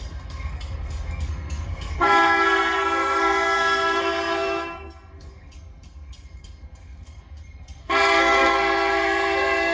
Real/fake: fake